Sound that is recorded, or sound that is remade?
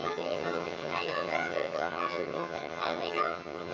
remade